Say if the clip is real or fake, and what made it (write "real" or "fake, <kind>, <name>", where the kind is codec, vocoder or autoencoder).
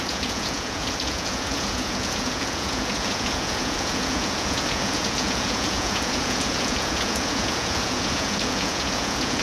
fake, vocoder, Vocos